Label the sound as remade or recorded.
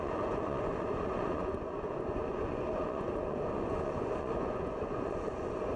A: remade